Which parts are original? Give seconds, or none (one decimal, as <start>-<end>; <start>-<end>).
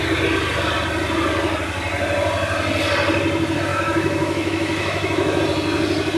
0.0-3.7; 5.4-6.2